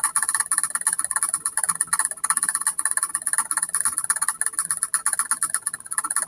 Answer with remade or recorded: recorded